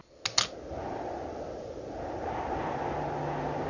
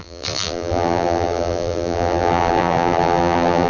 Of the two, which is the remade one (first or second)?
second